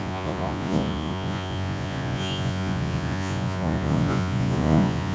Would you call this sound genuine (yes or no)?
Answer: no